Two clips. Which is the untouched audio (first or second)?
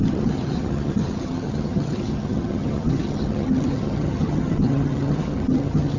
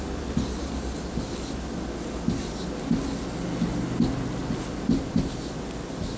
second